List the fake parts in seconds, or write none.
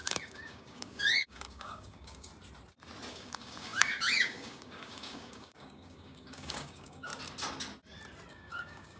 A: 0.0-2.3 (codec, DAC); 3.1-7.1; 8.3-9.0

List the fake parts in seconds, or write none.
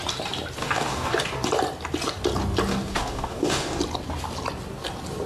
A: 0.6-1.2 (codec, DAC); 2.7-3.8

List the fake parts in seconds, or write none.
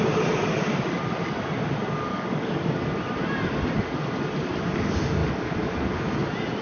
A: 2.1-2.6 (codec, DAC); 5.2-5.8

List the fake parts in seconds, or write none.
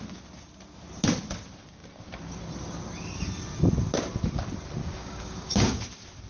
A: 4.8-5.8 (codec, DAC)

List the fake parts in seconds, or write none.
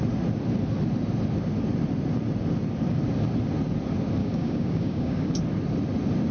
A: 4.2-5.3 (codec, DAC)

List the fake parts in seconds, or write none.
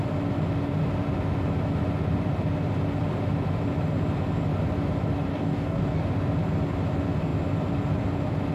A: 5.3-6.0 (codec, DAC)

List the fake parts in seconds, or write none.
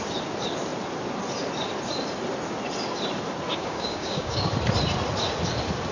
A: 3.5-4.5 (codec, DAC)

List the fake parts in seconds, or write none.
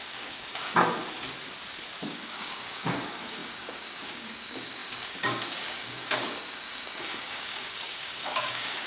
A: 0.0-1.0 (codec, DAC); 2.1-8.9